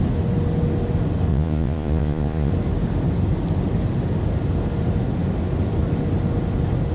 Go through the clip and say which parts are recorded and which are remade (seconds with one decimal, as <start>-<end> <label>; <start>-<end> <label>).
0.0-1.3 recorded; 1.3-2.5 remade; 2.5-6.9 recorded